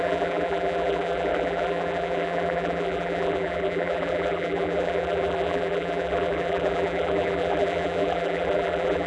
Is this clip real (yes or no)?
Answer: no